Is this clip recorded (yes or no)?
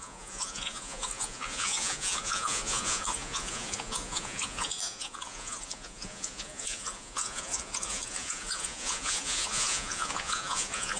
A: no